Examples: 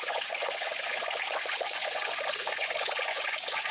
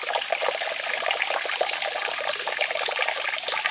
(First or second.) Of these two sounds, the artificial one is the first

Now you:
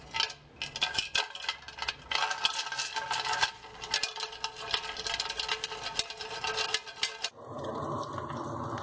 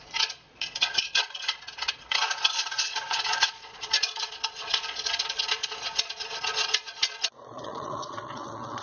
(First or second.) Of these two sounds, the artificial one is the second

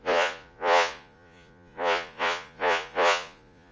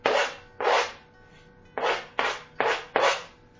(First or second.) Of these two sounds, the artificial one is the first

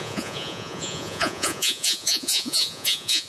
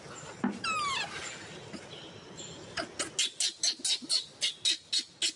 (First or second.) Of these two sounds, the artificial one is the first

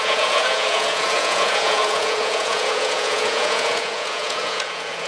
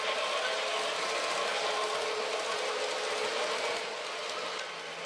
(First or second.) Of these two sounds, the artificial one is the first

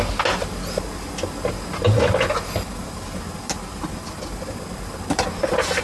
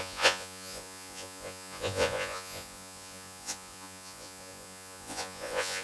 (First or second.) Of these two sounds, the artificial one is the second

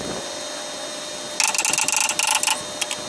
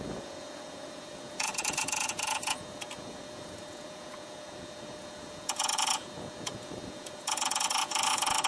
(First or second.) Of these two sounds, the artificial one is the second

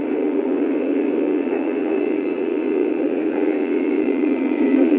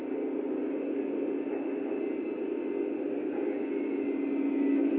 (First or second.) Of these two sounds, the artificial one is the first